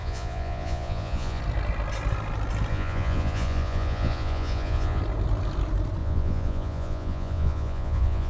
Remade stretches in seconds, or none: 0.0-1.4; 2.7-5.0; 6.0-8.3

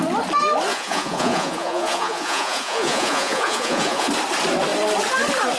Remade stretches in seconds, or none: 0.7-4.1

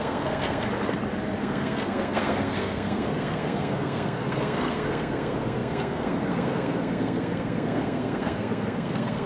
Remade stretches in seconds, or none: 0.0-0.7; 1.4-9.3

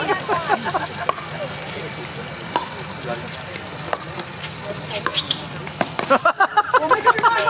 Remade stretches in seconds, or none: none

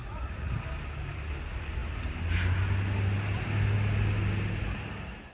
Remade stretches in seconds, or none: 0.0-0.6